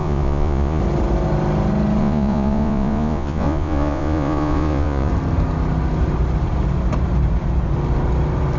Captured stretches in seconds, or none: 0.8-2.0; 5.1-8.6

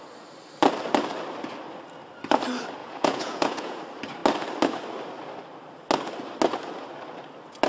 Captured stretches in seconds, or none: 0.0-2.8; 3.8-7.7